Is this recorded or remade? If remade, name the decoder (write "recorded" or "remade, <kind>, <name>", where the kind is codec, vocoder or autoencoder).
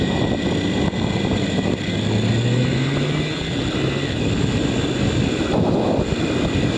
recorded